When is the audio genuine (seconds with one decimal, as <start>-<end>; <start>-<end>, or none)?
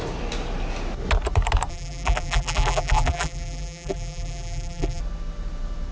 0.0-1.7; 5.0-5.9